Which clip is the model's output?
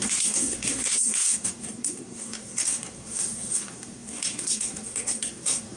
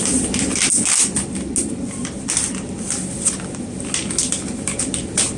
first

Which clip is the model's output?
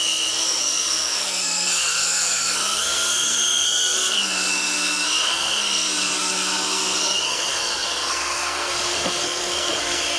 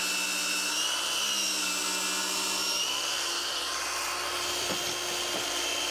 first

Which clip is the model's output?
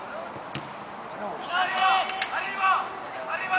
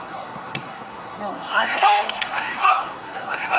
second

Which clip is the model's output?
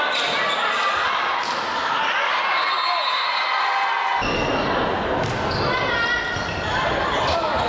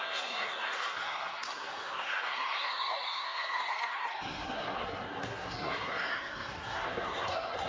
second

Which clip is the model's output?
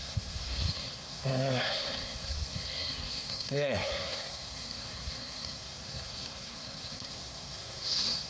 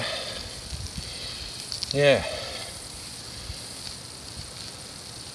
first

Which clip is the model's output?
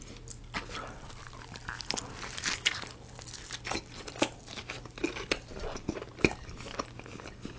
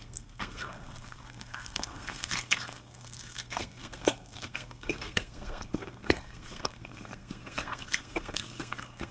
second